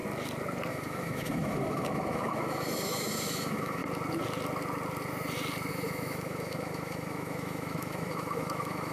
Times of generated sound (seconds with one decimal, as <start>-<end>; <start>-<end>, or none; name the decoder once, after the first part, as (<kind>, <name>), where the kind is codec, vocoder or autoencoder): 0.7-3.8 (autoencoder, DAC-VAE); 5.7-8.9